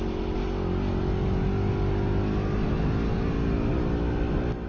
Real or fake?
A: real